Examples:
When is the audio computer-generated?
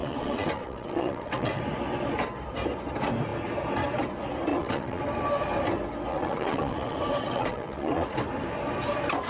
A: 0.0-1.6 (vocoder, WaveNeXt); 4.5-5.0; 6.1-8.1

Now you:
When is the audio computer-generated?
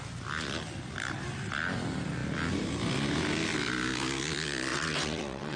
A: 4.7-5.6 (vocoder, WaveNeXt)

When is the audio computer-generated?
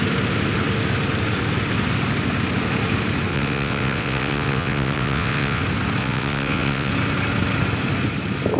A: 3.3-5.6 (vocoder, WaveNeXt); 6.0-6.9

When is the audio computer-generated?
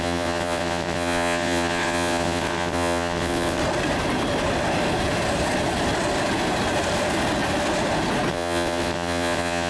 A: 0.0-3.6 (vocoder, WaveNeXt); 8.3-9.7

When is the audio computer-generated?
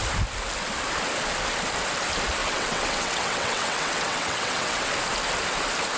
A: 2.4-4.9 (vocoder, WaveNeXt)